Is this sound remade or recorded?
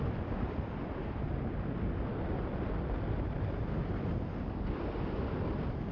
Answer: recorded